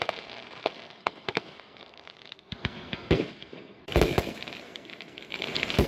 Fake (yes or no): yes